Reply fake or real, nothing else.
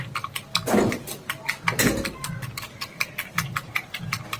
real